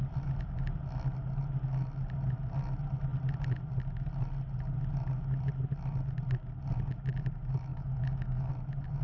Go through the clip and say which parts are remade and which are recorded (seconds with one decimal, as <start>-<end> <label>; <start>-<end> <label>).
0.0-7.7 recorded; 7.7-8.5 remade; 8.5-9.0 recorded